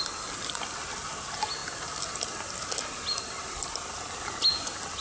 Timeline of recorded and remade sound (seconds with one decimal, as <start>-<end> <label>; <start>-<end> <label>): 0.0-5.0 recorded